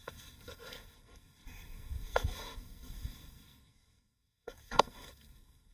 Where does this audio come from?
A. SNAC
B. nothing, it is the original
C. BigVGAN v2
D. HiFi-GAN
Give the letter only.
A